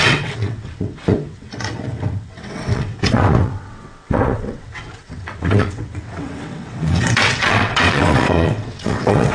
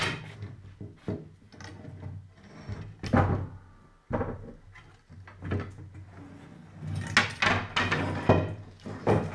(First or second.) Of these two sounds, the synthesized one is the first